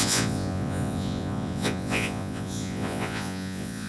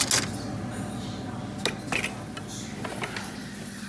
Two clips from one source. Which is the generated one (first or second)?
first